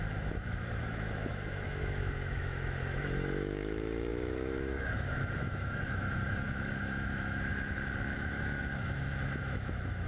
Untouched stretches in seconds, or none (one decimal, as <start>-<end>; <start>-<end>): none